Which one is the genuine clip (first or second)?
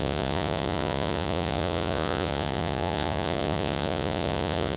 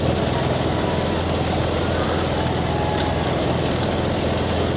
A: second